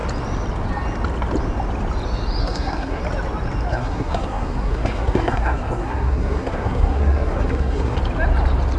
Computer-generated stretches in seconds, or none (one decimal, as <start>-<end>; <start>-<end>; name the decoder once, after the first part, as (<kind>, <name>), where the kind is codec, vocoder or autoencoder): 2.4-3.0 (codec, SNAC); 3.7-8.0